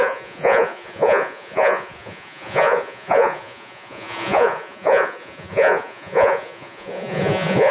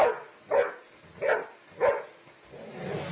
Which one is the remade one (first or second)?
first